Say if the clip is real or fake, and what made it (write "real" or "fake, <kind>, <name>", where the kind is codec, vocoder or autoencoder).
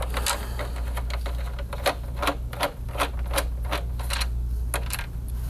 real